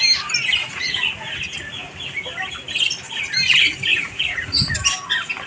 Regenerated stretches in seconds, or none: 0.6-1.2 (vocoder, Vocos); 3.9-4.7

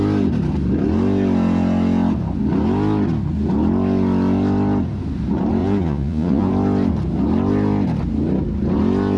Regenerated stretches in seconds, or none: 5.6-6.5 (vocoder, Vocos)

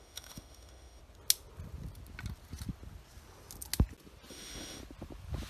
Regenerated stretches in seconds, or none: 0.0-1.0 (autoencoder, DAC-VAE); 4.3-4.8

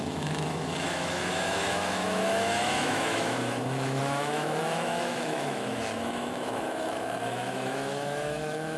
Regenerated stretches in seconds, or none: 0.0-8.8 (autoencoder, DAC-VAE)